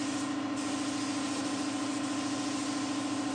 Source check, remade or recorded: recorded